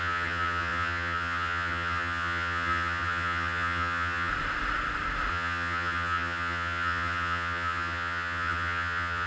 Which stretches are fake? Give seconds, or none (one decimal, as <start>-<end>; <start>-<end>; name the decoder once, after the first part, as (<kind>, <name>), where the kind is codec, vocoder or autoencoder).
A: 0.0-4.3 (vocoder, HiFi-GAN); 5.3-9.3

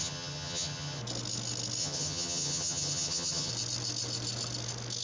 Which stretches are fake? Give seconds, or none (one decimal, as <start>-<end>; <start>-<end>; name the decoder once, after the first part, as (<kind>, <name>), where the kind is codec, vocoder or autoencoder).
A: 0.0-1.0 (vocoder, HiFi-GAN); 1.8-3.5

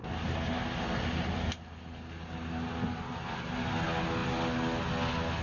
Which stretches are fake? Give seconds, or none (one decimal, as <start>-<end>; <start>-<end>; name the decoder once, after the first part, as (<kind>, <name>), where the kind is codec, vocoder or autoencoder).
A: none

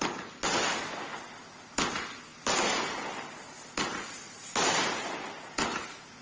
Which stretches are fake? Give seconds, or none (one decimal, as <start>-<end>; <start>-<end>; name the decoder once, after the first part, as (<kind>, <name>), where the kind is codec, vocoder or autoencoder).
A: none